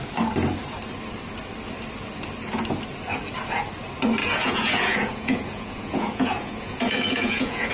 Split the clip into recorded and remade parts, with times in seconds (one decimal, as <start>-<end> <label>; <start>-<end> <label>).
0.0-4.2 recorded; 4.2-7.7 remade